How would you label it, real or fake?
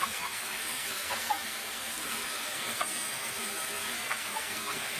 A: fake